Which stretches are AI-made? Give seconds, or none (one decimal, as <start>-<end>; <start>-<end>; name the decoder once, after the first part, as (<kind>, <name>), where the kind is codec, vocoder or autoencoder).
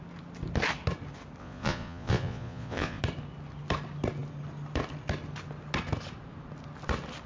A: 1.4-3.0 (vocoder, Vocos)